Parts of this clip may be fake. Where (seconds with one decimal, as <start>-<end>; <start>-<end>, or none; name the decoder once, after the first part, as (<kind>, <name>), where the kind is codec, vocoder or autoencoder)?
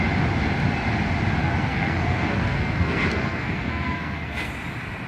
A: 1.4-4.5 (codec, SNAC)